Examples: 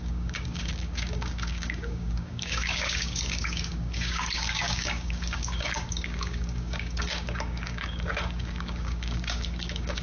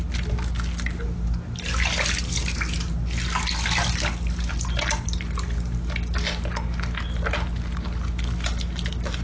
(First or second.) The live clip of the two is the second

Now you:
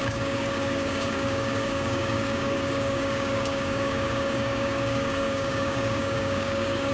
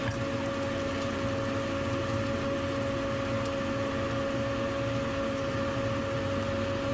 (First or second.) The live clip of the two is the second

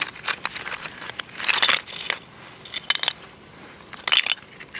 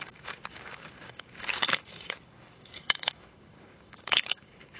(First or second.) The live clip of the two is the first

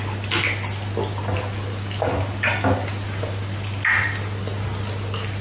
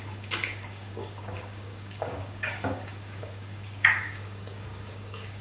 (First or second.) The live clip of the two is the first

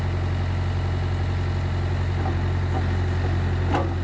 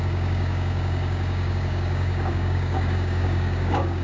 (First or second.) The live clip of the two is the first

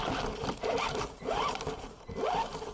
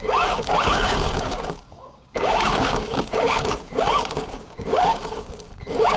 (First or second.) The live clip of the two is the first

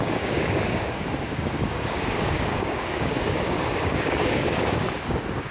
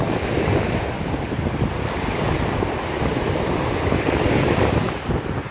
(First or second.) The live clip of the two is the second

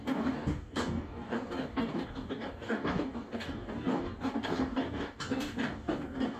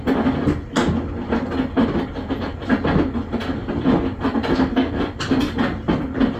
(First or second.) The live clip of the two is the second